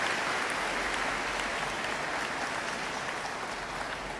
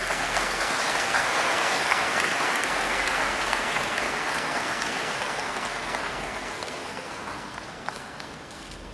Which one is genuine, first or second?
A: first